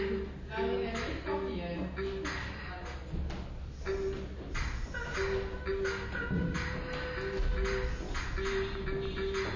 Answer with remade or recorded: recorded